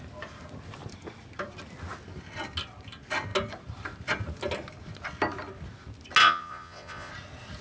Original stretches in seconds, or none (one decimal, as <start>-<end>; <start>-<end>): 0.0-6.2; 7.1-7.6